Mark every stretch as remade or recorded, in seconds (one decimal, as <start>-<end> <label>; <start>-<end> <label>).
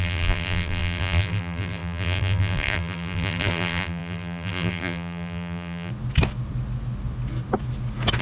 0.0-5.9 remade; 5.9-8.2 recorded